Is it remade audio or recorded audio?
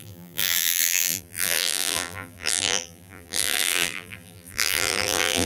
remade